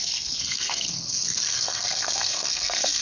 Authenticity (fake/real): fake